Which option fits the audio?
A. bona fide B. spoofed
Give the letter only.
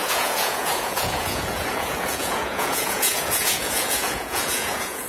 B